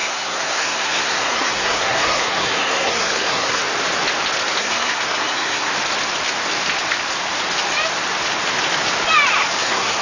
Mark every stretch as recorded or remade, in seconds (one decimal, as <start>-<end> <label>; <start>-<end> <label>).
0.0-3.6 remade; 3.6-4.6 recorded; 4.6-5.7 remade; 5.7-9.6 recorded; 9.6-10.0 remade